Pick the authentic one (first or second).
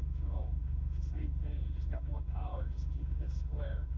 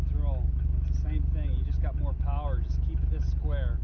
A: second